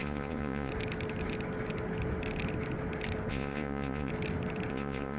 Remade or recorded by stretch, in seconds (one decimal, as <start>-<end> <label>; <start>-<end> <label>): 0.0-0.7 remade; 0.7-3.3 recorded; 3.3-4.1 remade; 4.1-4.7 recorded; 4.7-5.2 remade